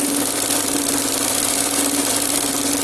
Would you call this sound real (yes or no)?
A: yes